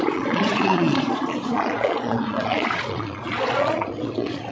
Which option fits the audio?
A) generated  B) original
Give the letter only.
A